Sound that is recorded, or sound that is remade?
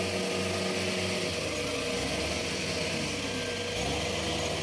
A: recorded